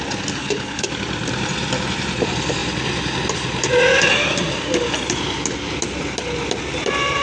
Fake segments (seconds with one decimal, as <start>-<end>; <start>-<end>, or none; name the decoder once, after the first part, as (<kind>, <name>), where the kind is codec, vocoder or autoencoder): 0.4-0.9 (codec, HILCodec)